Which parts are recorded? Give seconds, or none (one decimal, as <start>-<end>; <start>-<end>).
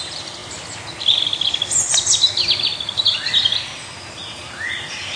0.4-1.0; 1.9-4.6